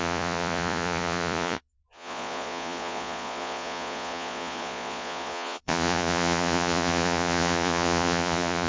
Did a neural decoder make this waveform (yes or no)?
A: yes